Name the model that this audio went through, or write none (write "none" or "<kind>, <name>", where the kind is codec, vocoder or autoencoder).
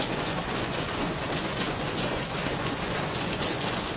vocoder, Vocos